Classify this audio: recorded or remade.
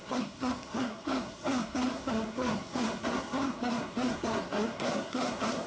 remade